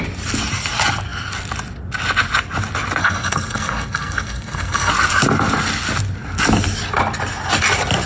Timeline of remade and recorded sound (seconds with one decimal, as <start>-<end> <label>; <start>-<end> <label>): 0.0-3.0 recorded; 3.0-4.9 remade; 4.9-8.1 recorded